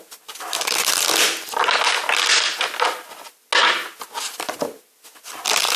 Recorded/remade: recorded